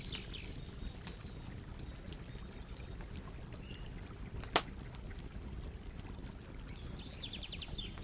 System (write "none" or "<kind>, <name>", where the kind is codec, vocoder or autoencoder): none